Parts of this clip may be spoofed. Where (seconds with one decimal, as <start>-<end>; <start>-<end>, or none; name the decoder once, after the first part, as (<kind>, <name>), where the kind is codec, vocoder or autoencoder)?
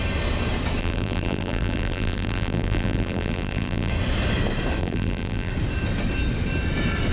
0.8-3.9 (vocoder, BigVGAN v2); 4.8-5.5